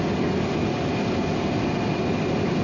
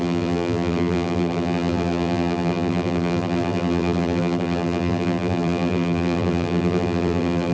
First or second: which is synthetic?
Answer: second